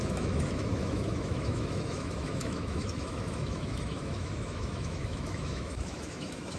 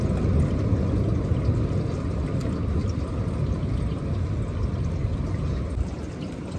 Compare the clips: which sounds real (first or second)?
second